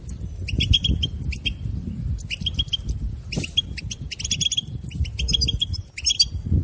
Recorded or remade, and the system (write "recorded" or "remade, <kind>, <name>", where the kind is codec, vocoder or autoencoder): recorded